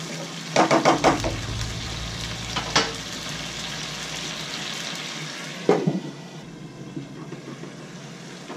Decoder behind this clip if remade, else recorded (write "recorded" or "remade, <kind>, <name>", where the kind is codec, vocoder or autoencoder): recorded